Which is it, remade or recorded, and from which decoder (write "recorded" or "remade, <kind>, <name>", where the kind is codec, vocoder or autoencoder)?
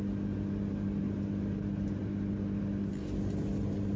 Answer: recorded